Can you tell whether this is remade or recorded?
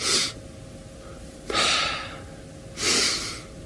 recorded